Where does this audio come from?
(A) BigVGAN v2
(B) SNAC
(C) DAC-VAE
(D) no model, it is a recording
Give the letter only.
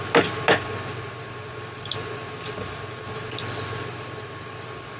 D